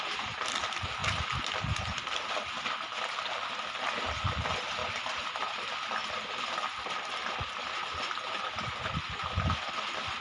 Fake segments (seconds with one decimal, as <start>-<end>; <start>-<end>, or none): 4.8-5.4